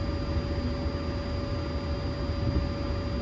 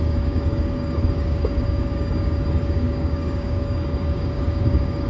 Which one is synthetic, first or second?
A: second